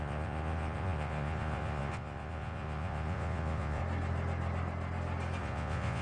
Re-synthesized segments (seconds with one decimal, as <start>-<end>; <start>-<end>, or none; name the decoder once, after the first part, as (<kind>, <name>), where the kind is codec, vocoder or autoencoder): 0.0-3.8 (vocoder, Vocos); 5.4-6.0